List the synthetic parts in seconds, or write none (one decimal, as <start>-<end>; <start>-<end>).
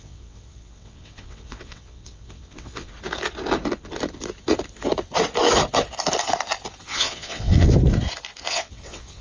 0.0-2.9; 6.8-7.7; 8.5-9.2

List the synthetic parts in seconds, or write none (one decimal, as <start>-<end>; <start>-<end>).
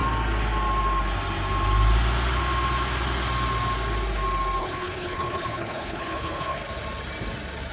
4.6-6.6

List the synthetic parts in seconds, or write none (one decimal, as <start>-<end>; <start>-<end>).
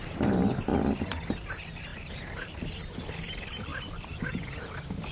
1.9-2.8; 3.7-4.6